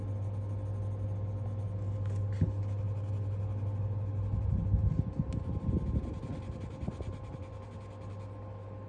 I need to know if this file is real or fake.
real